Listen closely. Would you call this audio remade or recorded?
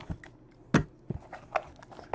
recorded